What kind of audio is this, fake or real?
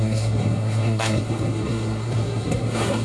fake